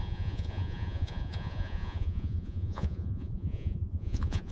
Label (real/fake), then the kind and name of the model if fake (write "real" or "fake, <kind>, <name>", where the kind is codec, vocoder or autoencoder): fake, vocoder, Vocos